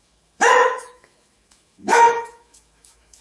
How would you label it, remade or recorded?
remade